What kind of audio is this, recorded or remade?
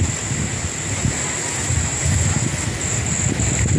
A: recorded